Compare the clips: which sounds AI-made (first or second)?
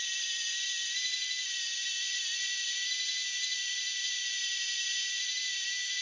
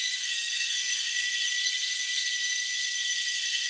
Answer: second